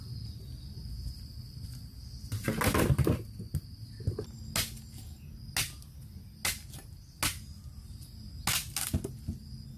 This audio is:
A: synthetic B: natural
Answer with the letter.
B